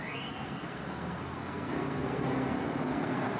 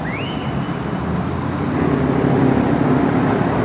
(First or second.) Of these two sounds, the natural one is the second